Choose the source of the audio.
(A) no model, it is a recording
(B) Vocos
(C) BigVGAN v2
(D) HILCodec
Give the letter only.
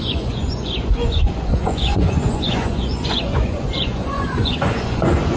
B